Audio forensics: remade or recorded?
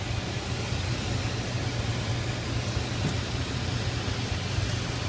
recorded